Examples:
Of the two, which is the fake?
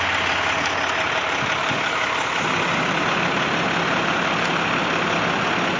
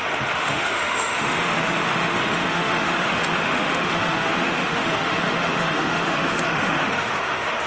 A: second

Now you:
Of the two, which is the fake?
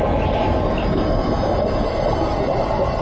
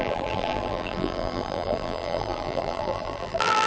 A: second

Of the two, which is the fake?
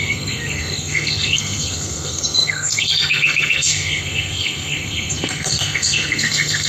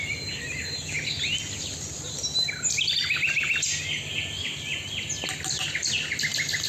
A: first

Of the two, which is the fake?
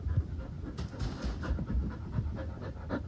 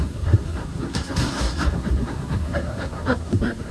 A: second